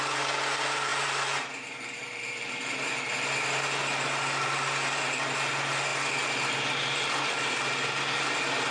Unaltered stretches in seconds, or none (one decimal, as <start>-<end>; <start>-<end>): 0.0-0.9; 2.5-8.7